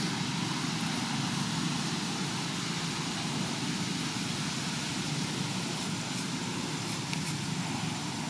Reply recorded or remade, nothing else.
recorded